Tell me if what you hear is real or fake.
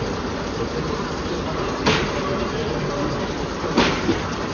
real